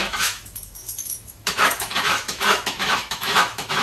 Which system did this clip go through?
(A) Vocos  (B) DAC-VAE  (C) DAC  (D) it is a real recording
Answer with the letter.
B